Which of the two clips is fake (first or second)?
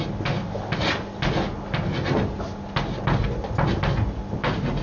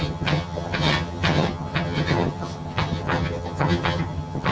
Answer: second